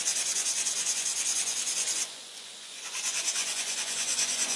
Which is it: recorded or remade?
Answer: remade